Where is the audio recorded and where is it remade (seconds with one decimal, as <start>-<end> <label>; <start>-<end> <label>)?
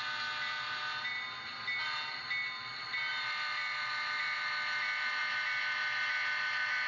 0.0-6.9 recorded